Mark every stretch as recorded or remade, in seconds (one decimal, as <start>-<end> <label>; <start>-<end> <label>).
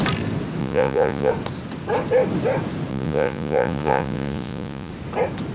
0.0-0.6 recorded; 0.6-1.3 remade; 1.3-2.9 recorded; 2.9-4.9 remade; 4.9-5.5 recorded